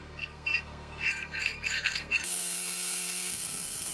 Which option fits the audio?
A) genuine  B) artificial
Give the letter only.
B